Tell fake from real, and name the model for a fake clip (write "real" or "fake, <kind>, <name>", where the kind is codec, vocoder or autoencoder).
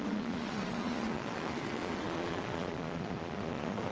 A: fake, vocoder, Vocos